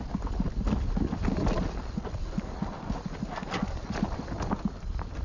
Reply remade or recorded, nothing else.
recorded